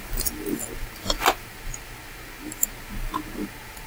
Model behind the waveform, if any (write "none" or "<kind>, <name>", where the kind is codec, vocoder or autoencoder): none